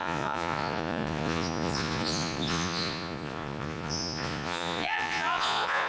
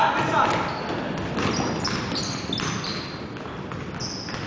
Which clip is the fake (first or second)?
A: first